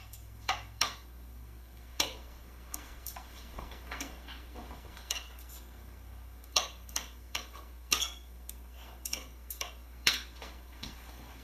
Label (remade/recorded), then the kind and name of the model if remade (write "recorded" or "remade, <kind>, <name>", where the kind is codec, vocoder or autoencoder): remade, codec, SNAC